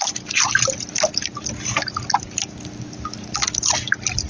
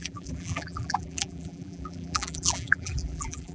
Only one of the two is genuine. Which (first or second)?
first